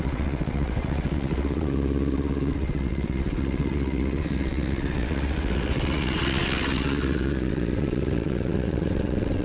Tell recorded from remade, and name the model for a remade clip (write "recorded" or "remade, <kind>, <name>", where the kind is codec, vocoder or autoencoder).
remade, vocoder, WaveNeXt